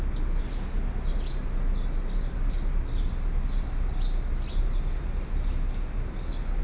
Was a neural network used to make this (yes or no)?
no